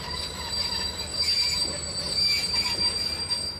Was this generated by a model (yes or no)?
no